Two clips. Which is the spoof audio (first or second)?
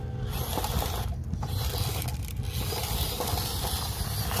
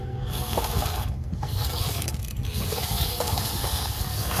second